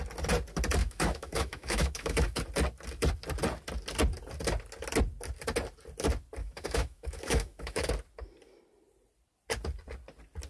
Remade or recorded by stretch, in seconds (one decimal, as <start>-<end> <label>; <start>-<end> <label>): 0.0-0.8 recorded; 0.8-2.4 remade; 2.4-6.4 recorded; 6.4-7.9 remade; 7.9-10.5 recorded